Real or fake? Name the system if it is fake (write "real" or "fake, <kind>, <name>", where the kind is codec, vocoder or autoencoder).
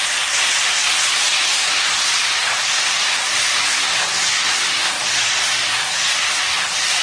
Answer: real